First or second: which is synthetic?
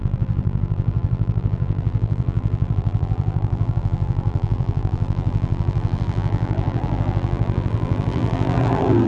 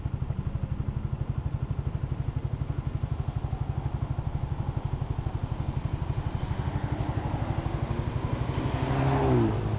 first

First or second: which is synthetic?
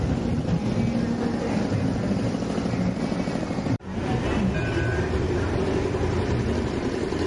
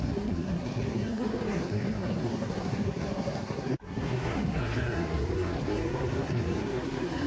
second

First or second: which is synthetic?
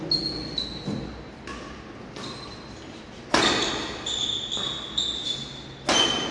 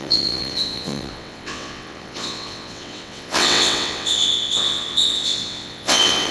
second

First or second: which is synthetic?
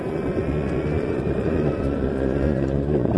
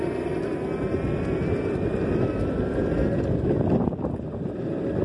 first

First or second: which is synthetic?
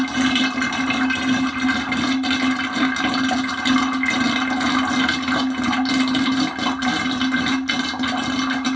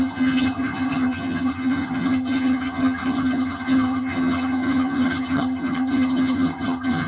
second